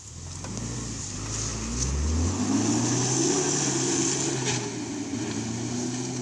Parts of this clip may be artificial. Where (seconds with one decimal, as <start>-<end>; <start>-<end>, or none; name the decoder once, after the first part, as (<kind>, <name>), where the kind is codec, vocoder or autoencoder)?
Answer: none